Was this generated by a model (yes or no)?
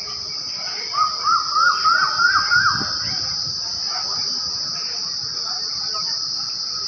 no